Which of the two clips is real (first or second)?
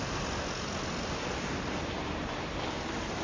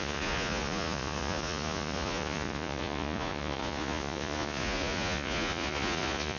first